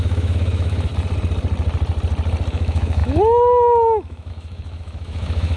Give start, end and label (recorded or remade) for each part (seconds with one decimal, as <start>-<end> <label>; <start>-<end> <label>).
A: 0.0-0.9 remade; 0.9-2.5 recorded; 2.5-5.6 remade